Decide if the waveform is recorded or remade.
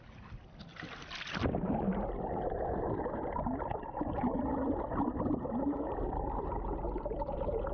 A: recorded